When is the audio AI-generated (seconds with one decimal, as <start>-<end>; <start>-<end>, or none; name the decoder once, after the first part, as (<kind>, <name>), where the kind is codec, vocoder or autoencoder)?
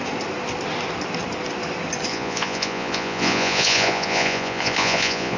2.1-5.4 (vocoder, Vocos)